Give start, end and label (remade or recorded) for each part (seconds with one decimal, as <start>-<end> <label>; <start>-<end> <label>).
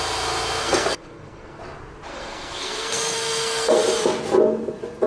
0.0-0.6 recorded; 0.6-1.6 remade; 1.6-2.1 recorded; 2.1-3.8 remade; 3.8-5.1 recorded